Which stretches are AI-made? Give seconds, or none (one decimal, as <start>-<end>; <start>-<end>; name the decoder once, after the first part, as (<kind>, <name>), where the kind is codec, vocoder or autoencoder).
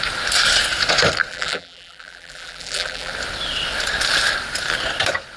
1.3-3.1 (vocoder, BigVGAN v2)